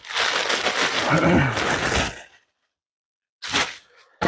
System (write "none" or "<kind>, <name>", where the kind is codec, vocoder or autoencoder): none